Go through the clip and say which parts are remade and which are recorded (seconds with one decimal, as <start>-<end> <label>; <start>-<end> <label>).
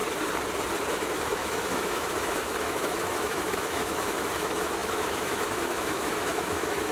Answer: 0.0-0.9 recorded; 0.9-6.9 remade